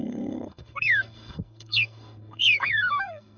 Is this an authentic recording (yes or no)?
no